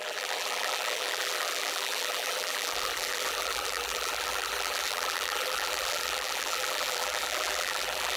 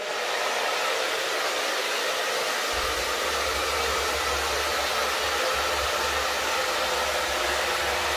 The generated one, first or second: first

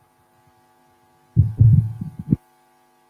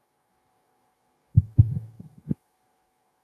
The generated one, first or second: second